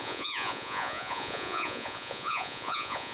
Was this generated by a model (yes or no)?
yes